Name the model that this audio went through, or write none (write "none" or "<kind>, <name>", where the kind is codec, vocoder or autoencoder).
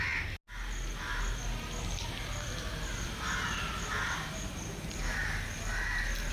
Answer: none